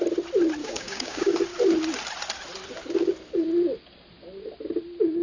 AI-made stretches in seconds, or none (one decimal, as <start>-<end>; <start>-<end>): 0.6-1.3